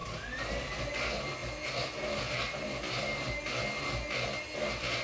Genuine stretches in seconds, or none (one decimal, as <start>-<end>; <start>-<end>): 0.0-5.0